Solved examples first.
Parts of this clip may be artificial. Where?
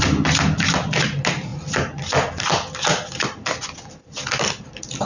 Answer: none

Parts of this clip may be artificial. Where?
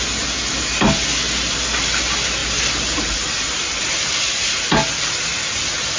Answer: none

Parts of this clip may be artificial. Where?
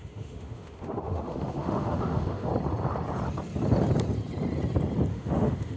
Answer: 0.0-2.5; 5.1-5.8